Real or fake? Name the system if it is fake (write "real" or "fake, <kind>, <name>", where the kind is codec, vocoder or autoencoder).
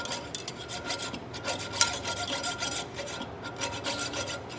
real